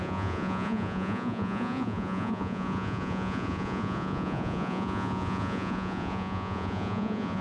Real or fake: fake